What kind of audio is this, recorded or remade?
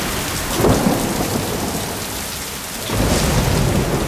recorded